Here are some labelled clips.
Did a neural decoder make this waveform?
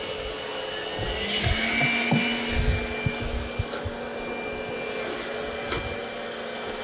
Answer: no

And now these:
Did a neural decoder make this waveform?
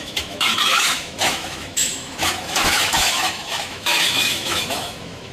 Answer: yes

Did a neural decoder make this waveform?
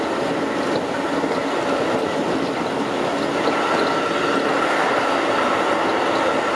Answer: no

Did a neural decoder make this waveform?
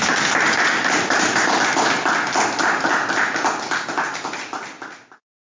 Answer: no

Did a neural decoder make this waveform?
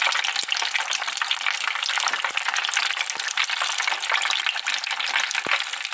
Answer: no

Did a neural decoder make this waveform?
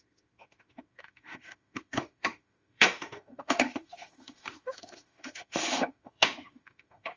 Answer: yes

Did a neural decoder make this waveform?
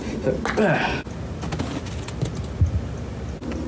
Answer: no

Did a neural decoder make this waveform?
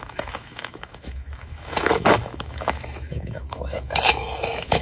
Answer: yes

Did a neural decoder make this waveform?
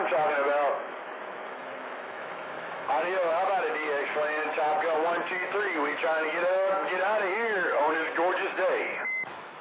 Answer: yes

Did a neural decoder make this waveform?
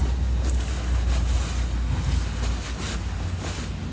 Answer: no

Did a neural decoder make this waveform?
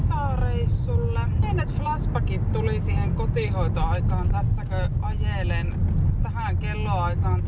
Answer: no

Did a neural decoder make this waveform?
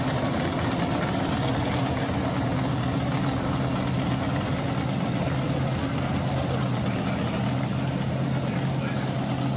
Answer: no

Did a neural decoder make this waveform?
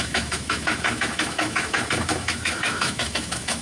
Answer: yes